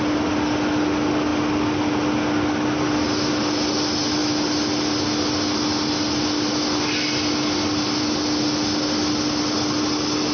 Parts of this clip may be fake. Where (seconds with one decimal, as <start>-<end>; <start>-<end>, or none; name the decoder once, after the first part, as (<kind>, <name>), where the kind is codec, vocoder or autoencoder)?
none